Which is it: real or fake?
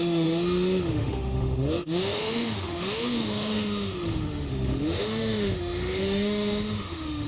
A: fake